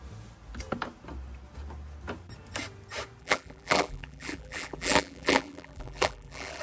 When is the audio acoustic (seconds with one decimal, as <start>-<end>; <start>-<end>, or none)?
0.0-3.2